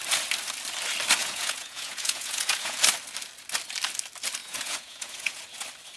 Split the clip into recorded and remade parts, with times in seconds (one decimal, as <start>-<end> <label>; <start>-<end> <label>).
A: 0.0-1.2 recorded; 1.2-2.8 remade; 2.8-4.4 recorded; 4.4-5.4 remade; 5.4-6.0 recorded